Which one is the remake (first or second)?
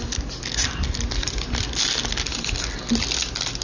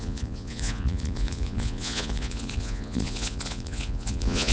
second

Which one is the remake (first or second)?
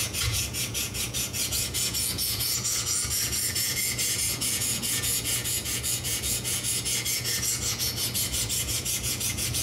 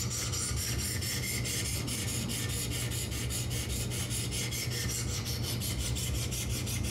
first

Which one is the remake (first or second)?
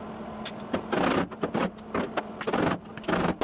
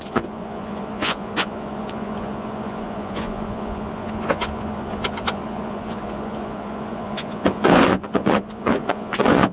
second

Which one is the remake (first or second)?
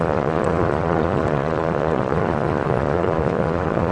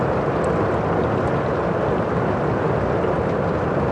first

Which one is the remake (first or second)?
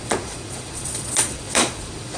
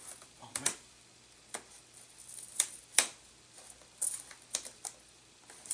first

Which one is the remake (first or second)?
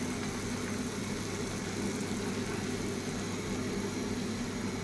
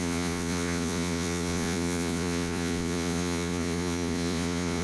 second